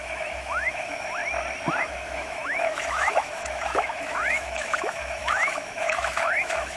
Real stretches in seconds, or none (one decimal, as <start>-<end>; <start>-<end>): 1.2-1.8